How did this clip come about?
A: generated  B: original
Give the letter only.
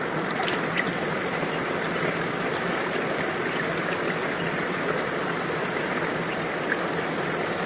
B